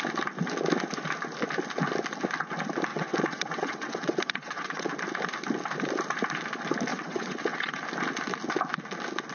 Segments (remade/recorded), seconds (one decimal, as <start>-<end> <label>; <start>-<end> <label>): 0.0-2.9 recorded; 2.9-4.9 remade; 4.9-6.9 recorded; 6.9-7.8 remade; 7.8-9.3 recorded